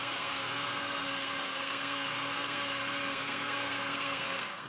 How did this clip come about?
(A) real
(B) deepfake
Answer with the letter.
B